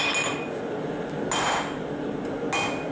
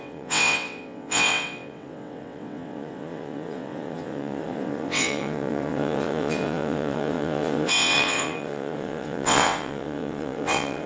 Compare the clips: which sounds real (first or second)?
first